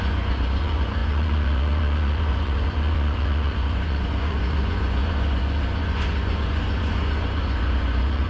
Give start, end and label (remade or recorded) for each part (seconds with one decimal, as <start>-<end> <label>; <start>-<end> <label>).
0.0-8.3 remade